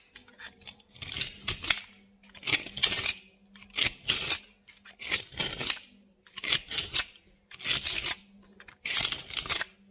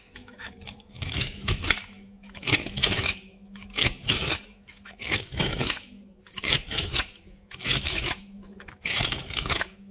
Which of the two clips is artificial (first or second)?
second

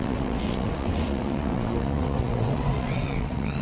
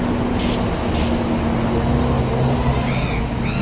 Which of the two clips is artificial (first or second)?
first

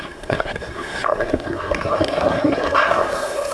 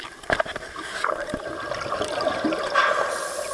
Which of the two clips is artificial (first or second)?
first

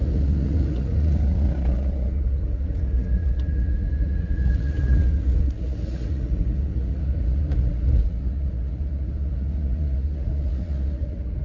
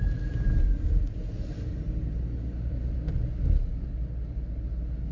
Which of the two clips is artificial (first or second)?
first